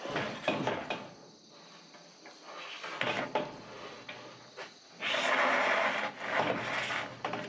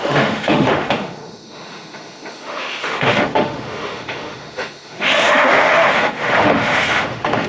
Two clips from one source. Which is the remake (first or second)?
second